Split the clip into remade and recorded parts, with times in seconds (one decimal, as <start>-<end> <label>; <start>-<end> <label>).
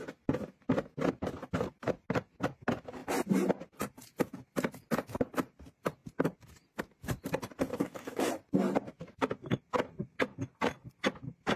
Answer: 0.0-7.7 recorded; 7.7-8.3 remade; 8.3-11.6 recorded